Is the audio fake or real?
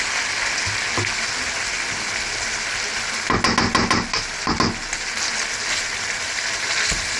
real